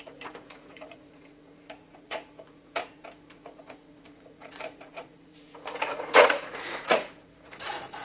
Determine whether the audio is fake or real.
fake